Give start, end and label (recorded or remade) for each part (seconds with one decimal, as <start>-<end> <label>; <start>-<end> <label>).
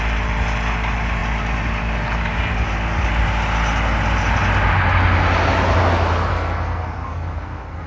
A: 0.0-6.3 recorded; 6.3-7.9 remade